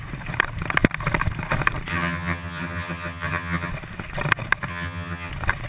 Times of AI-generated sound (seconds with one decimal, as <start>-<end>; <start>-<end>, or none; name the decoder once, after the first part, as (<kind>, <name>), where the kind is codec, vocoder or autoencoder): 1.9-3.7 (vocoder, HiFi-GAN); 4.7-5.3